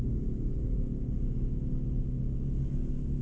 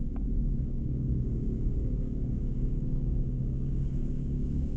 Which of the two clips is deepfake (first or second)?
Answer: second